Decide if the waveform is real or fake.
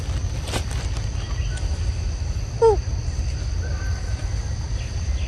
real